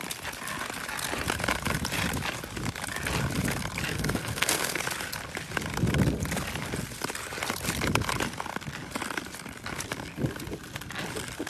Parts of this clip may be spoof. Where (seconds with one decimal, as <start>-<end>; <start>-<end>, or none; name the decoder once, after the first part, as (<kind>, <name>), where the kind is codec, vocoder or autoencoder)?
3.9-4.8 (codec, SNAC)